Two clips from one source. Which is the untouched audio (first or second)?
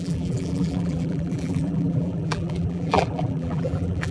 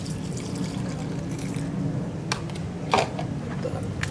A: second